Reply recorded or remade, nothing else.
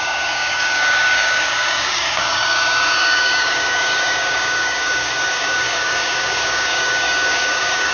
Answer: remade